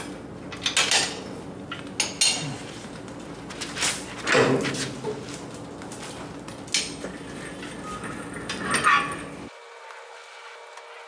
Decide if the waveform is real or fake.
real